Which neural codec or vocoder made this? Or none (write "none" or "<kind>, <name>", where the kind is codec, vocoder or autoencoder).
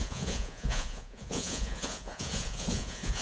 vocoder, Vocos